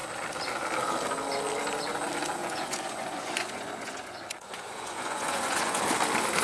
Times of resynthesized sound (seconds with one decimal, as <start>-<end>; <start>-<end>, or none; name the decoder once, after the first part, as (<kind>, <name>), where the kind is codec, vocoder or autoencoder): 2.4-5.8 (vocoder, Vocos)